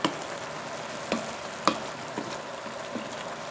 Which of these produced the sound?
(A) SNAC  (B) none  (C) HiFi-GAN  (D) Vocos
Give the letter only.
B